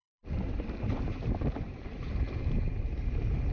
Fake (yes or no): yes